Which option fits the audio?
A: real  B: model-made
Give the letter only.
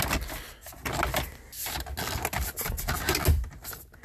A